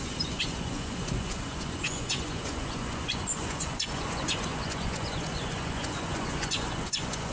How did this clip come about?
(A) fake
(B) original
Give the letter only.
A